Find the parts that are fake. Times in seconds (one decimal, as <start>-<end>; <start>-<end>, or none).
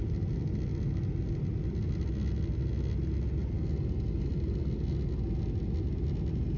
none